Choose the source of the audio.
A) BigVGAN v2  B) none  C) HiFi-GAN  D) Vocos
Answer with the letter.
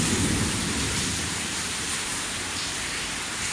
B